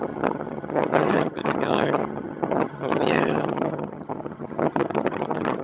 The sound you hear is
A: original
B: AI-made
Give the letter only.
B